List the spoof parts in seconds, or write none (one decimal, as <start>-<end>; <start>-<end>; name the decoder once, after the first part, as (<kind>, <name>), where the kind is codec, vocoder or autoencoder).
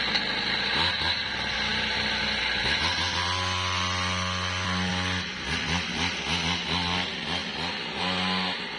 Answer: none